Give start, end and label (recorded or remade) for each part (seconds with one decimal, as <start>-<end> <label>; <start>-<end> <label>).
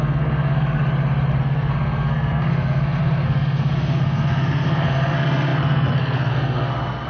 0.0-0.8 remade; 0.8-1.4 recorded; 1.4-7.1 remade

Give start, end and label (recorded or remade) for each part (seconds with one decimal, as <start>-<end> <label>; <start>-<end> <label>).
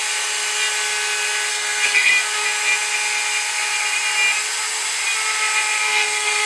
0.0-1.5 recorded; 1.5-2.1 remade; 2.1-5.8 recorded; 5.8-6.5 remade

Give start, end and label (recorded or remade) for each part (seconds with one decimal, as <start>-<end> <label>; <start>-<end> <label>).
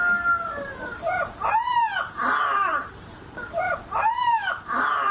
0.0-5.1 recorded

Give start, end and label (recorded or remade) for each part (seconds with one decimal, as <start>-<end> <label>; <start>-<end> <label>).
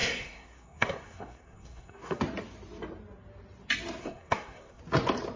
0.0-2.2 remade; 2.2-4.0 recorded; 4.0-4.8 remade; 4.8-5.4 recorded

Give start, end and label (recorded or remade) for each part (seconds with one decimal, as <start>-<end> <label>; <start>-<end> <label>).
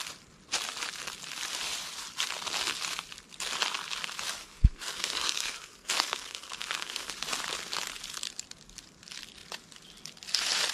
0.0-4.4 recorded; 4.4-7.1 remade; 7.1-10.7 recorded